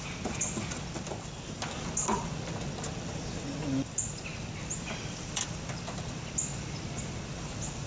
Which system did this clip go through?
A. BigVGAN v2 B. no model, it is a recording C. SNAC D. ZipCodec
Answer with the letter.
B